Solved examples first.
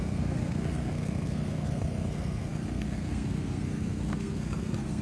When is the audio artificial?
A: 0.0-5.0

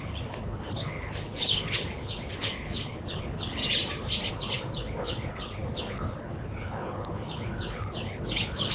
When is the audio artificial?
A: 0.0-3.6; 4.3-8.7

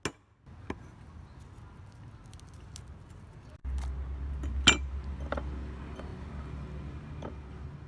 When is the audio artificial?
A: none

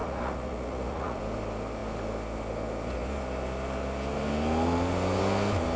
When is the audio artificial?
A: 0.0-1.2

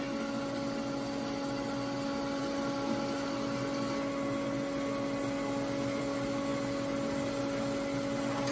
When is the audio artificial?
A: none

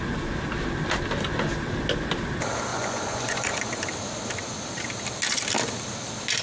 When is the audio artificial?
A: 2.7-3.6